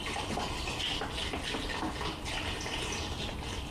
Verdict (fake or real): real